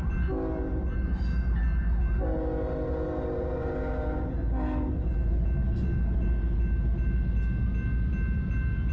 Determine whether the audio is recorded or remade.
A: recorded